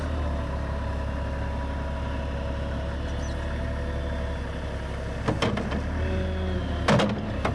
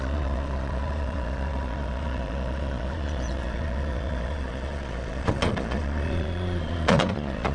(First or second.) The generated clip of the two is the second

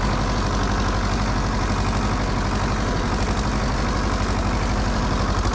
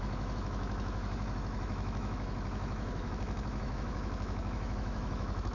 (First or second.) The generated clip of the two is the second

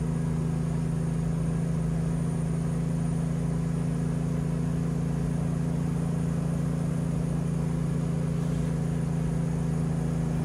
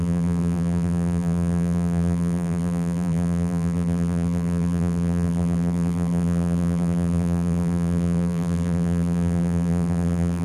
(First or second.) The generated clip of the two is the second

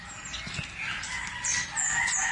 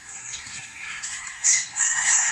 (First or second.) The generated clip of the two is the second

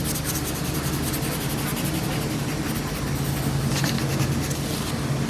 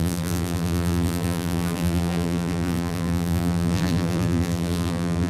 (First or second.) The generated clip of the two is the second